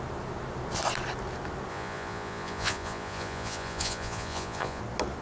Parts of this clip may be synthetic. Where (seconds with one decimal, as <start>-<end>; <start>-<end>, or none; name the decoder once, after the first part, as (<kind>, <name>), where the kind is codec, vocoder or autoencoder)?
1.7-4.8 (vocoder, Vocos)